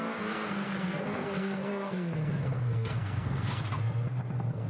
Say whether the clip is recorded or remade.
remade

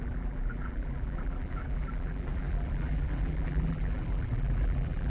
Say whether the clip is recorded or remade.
remade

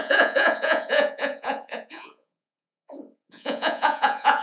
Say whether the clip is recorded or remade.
remade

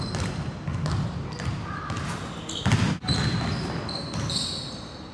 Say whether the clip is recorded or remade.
recorded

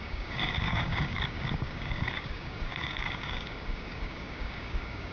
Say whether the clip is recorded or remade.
remade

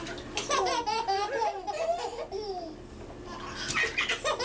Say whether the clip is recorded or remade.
recorded